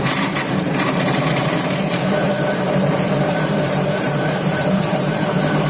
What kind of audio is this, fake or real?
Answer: fake